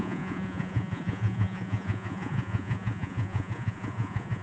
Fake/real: fake